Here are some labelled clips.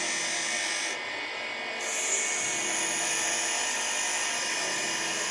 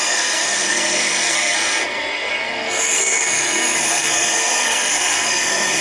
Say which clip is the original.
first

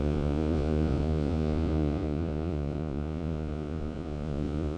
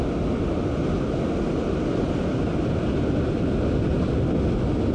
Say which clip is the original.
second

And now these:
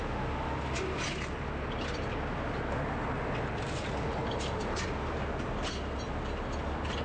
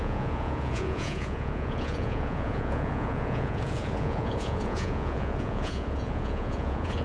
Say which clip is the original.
first